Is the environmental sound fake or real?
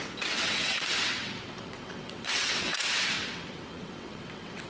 fake